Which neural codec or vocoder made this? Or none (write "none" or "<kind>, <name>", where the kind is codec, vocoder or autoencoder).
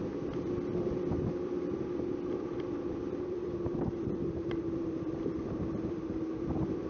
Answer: vocoder, BigVGAN v2